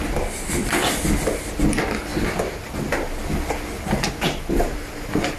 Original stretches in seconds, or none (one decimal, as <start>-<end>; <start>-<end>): 0.0-5.4

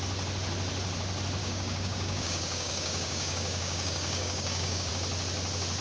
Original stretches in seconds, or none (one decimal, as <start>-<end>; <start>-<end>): 0.0-1.4; 4.9-5.8

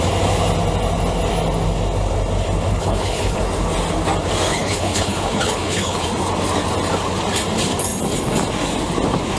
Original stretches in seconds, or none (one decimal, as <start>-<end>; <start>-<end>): 0.0-2.7; 3.4-4.5; 6.1-9.4

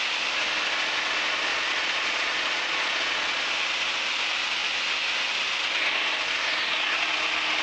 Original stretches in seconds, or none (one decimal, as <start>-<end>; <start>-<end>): 0.0-1.5; 3.5-7.6

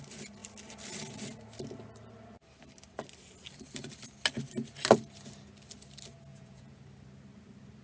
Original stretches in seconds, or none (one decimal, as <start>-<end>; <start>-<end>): 0.0-6.3; 6.8-7.8

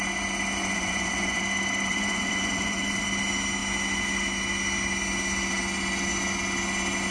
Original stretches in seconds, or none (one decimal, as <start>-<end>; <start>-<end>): 0.0-0.6; 1.4-1.9; 3.0-7.1

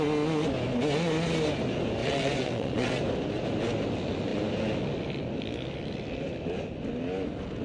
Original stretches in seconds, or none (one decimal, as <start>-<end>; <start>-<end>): 0.0-2.0; 3.0-7.6